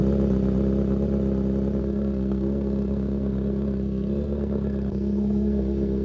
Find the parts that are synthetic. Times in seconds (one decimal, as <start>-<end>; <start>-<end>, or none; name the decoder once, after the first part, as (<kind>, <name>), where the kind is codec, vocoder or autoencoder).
1.8-6.0 (codec, SNAC)